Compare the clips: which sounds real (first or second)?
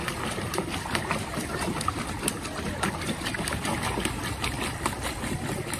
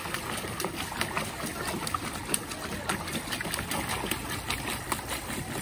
second